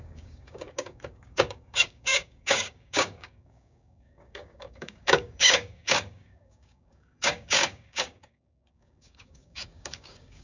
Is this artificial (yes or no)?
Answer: yes